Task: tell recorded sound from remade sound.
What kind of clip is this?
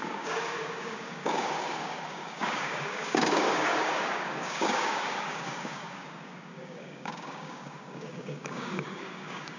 remade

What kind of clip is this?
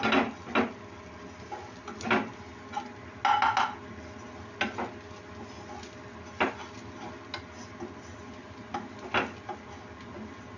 recorded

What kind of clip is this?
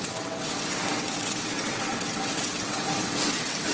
remade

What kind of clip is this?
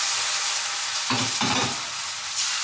recorded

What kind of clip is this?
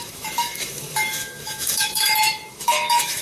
remade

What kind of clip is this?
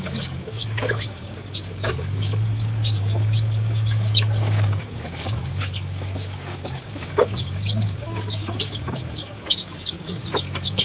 remade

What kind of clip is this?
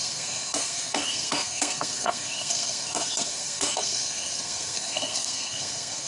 remade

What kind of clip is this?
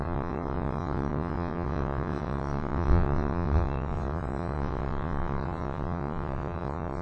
remade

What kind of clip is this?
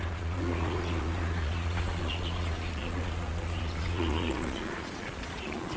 remade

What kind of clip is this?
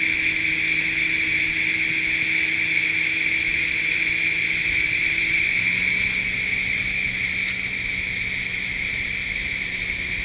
recorded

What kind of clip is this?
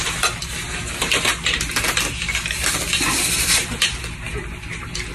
recorded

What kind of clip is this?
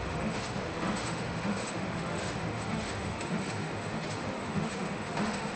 remade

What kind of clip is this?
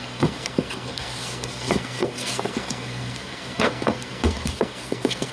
remade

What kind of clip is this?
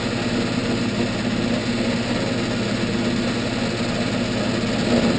recorded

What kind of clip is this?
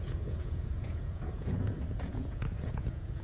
remade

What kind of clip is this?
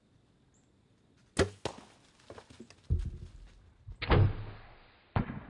recorded